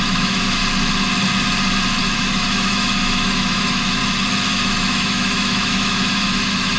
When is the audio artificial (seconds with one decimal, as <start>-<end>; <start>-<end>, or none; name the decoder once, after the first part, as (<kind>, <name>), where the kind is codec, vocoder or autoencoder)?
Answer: 0.0-0.6 (autoencoder, DAC-VAE); 2.0-4.0; 4.5-6.8